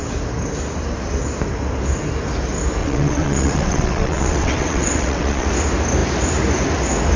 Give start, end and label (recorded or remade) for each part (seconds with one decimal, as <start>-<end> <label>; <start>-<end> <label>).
0.0-2.8 recorded; 2.8-5.5 remade; 5.5-7.2 recorded